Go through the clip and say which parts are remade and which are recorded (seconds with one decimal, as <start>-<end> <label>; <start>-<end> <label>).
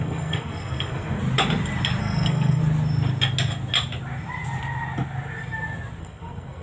0.0-1.2 remade; 1.2-2.0 recorded; 2.0-2.6 remade; 2.6-6.0 recorded; 6.0-6.6 remade